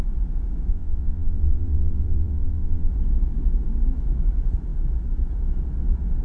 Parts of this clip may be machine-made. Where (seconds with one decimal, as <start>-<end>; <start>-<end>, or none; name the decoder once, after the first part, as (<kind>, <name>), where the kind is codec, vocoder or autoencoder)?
0.7-2.9 (vocoder, WaveNeXt)